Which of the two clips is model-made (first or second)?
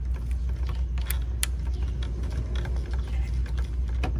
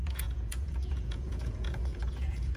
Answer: second